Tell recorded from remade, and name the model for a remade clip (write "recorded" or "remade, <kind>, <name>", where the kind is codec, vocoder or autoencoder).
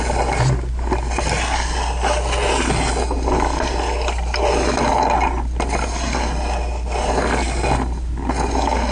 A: recorded